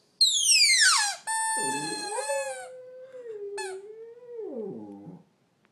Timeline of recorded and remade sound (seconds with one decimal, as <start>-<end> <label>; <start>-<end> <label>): 0.0-1.7 recorded; 1.7-2.3 remade; 2.3-5.7 recorded